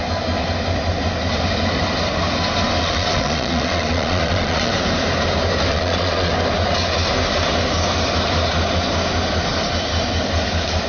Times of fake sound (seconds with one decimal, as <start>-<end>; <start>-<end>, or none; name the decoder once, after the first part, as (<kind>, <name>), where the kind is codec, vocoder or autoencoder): 2.8-4.7 (vocoder, Vocos); 5.7-6.3